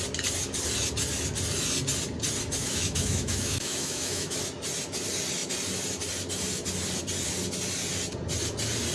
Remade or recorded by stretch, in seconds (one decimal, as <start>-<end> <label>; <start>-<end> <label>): 0.0-2.6 recorded; 2.6-4.4 remade; 4.4-8.9 recorded